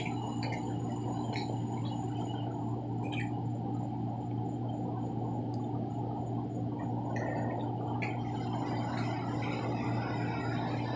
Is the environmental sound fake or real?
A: real